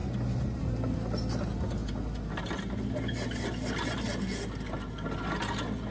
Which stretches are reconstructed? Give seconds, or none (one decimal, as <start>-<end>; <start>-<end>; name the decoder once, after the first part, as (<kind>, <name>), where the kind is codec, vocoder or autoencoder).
none